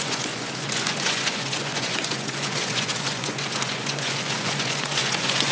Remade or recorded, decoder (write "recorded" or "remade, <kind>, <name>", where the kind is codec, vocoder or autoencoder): remade, vocoder, Vocos